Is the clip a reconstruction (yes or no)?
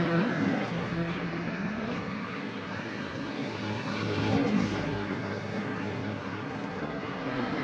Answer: yes